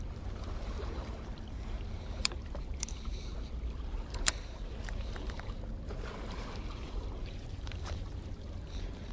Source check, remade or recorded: remade